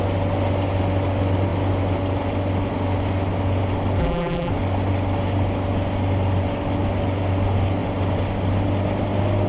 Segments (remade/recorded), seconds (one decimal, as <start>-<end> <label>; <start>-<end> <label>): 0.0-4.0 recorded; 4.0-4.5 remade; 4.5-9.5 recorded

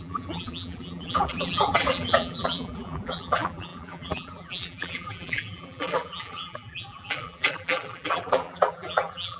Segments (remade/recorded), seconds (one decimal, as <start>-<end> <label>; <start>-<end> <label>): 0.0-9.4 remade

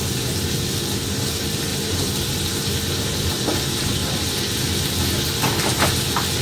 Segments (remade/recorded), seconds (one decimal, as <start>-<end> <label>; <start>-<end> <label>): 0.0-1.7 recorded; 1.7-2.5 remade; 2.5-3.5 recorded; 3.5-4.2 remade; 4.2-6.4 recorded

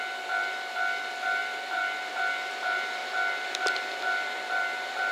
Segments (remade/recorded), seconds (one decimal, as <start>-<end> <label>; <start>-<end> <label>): 0.0-3.0 remade; 3.0-3.7 recorded; 3.7-5.1 remade

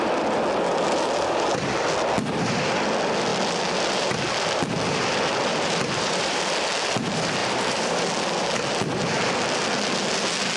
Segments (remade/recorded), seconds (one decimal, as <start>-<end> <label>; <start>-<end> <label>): 0.0-5.5 recorded; 5.5-6.4 remade; 6.4-7.4 recorded; 7.4-8.0 remade; 8.0-10.6 recorded